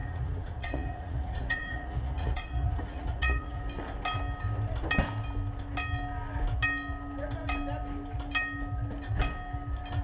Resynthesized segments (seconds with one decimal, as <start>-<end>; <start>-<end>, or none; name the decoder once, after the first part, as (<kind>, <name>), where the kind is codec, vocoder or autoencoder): 0.0-3.6 (vocoder, Vocos)